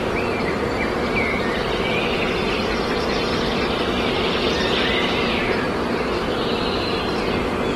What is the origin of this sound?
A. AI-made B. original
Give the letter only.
B